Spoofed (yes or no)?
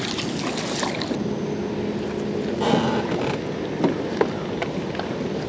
no